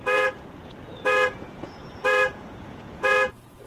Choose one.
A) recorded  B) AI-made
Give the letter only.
B